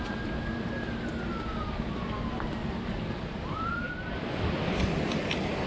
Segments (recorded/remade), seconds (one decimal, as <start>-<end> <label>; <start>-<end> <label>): 0.0-5.7 recorded